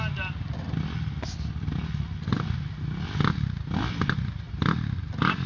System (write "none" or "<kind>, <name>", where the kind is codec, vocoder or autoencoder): none